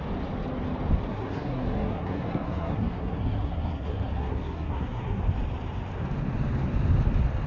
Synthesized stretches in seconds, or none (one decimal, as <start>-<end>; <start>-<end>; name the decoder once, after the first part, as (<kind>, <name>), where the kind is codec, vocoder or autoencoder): 1.1-5.2 (codec, SNAC)